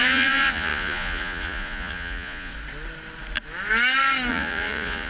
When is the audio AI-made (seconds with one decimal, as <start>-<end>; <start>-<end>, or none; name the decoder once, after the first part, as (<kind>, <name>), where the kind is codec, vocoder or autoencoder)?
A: 0.0-2.5 (vocoder, Vocos); 4.3-5.1